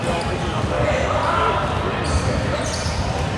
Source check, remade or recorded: recorded